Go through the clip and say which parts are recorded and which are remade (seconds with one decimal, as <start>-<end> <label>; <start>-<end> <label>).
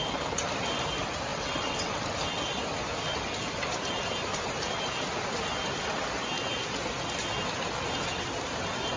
0.0-1.3 recorded; 1.3-2.0 remade; 2.0-9.0 recorded